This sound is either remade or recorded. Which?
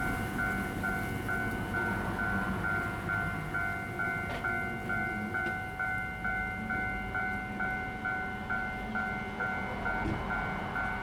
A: recorded